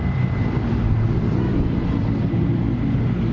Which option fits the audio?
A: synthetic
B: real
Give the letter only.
B